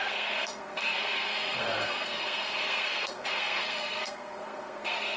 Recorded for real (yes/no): no